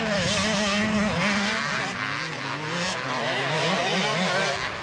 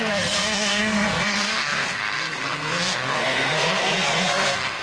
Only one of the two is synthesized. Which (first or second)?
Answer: second